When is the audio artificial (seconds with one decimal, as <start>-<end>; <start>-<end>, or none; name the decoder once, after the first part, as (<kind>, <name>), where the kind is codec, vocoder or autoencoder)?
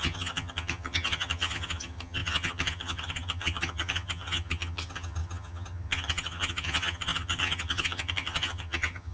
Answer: 0.0-9.1 (vocoder, HiFi-GAN)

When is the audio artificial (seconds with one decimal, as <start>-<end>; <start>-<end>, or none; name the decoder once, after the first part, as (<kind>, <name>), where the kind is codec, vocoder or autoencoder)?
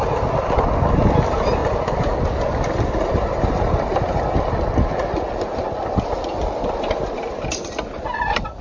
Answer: none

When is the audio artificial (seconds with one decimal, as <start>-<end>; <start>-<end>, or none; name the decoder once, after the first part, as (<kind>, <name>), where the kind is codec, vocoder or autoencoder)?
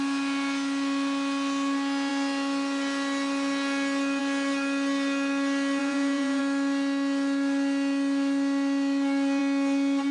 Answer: 5.8-6.4 (vocoder, Vocos)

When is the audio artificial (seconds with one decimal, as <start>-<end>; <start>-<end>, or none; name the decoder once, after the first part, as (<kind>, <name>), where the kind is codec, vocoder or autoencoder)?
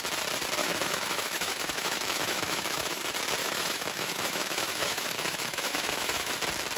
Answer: 0.6-3.0 (autoencoder, DAC-VAE); 3.4-6.3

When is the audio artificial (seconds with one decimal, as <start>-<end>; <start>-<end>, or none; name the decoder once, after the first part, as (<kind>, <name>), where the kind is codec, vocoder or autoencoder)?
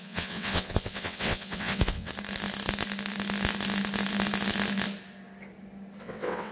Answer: 0.0-2.1 (vocoder, WaveNeXt); 6.0-6.5